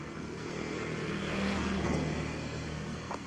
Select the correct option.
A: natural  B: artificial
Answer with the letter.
B